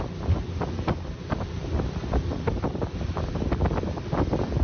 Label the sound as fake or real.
fake